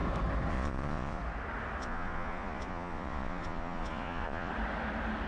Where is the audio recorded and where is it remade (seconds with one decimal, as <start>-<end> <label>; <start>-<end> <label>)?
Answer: 0.0-0.5 recorded; 0.5-1.2 remade; 1.2-1.8 recorded; 1.8-4.5 remade; 4.5-5.3 recorded